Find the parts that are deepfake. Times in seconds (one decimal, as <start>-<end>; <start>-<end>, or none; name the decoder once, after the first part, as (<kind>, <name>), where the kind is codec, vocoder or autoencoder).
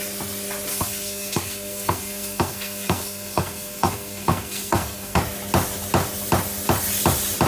0.7-5.2 (codec, SNAC)